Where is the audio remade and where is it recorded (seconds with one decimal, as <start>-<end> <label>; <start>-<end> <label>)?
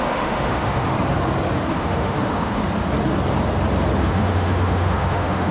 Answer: 0.0-0.9 remade; 0.9-1.7 recorded; 1.7-2.6 remade; 2.6-4.0 recorded; 4.0-5.5 remade